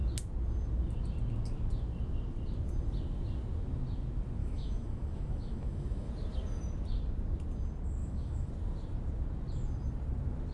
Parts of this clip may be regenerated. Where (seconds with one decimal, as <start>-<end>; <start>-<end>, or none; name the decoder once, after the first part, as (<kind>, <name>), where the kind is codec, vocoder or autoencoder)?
4.4-6.1 (autoencoder, DAC-VAE); 8.0-8.5